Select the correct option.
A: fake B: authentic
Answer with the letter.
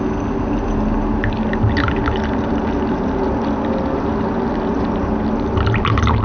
B